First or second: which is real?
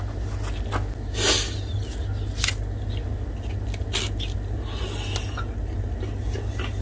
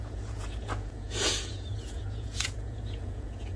first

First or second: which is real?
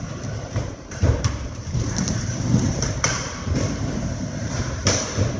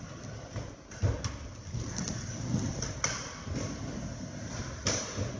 second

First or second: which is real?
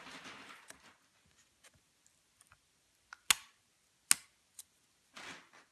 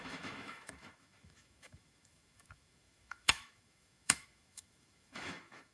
first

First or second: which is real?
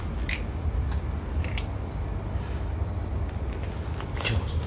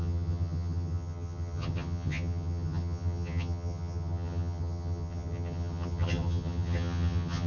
first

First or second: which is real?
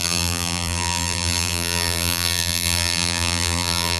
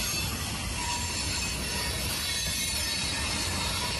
second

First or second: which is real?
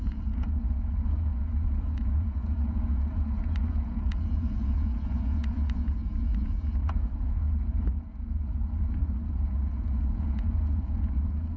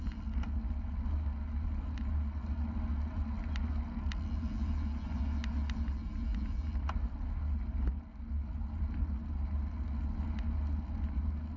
second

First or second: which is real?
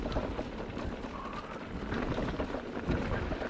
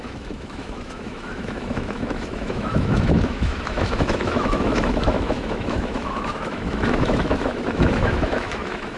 first